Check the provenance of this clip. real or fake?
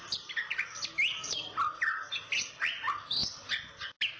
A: real